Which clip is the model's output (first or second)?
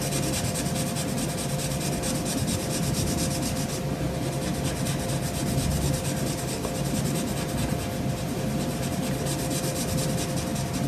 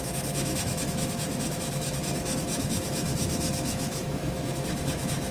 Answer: second